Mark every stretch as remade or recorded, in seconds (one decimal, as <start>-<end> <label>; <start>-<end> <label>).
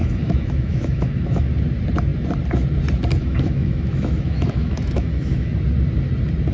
0.0-1.5 remade; 1.5-3.2 recorded; 3.2-5.5 remade; 5.5-6.5 recorded